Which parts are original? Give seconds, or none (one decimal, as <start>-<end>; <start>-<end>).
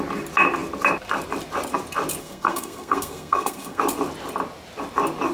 0.0-2.2; 3.8-5.3